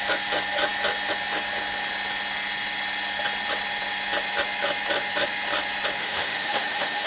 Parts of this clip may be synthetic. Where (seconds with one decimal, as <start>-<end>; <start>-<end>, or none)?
6.0-7.1